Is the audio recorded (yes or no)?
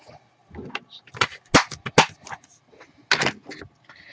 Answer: yes